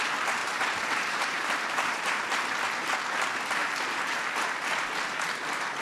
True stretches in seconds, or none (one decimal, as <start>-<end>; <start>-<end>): 0.0-0.4; 2.2-3.6; 4.3-5.8